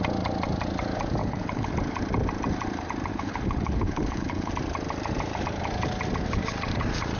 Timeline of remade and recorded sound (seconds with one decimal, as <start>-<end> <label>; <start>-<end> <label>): 0.0-1.2 recorded; 1.2-1.7 remade; 1.7-3.1 recorded; 3.1-4.5 remade; 4.5-7.2 recorded